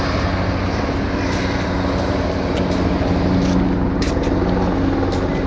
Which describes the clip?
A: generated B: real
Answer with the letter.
B